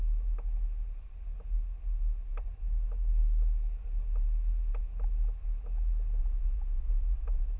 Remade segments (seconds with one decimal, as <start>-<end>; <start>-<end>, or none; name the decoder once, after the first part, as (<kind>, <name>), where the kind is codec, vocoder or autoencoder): 6.2-7.6 (vocoder, Vocos)